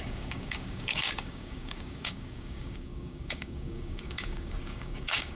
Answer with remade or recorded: remade